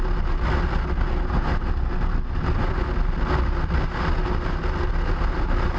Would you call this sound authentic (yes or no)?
yes